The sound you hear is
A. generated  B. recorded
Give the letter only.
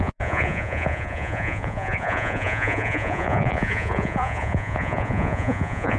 A